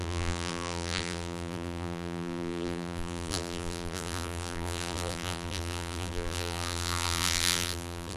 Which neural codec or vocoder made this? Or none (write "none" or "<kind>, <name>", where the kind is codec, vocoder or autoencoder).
vocoder, BigVGAN v2